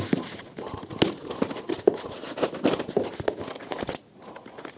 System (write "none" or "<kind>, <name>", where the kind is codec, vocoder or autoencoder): none